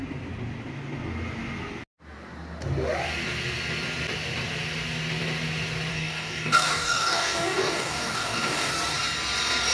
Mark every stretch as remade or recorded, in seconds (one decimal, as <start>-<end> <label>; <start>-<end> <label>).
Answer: 0.0-5.9 recorded; 5.9-8.7 remade; 8.7-9.7 recorded